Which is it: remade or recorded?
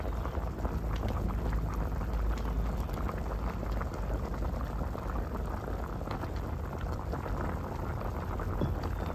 recorded